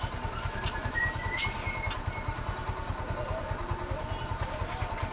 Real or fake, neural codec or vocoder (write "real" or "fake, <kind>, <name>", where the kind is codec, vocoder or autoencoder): real